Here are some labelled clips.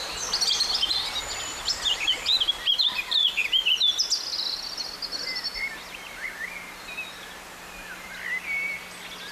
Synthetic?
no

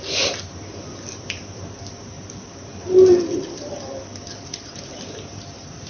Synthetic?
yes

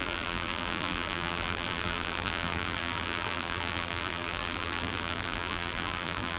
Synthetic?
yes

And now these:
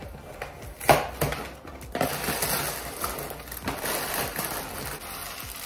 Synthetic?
no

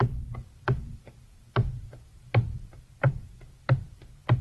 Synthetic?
yes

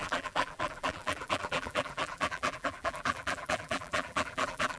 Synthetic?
yes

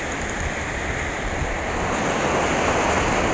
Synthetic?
no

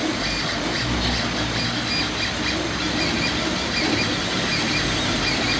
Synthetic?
no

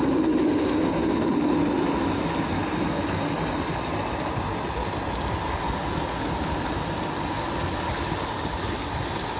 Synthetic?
no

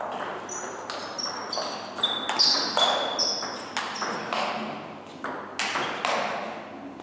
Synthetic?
no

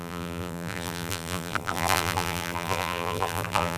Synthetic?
yes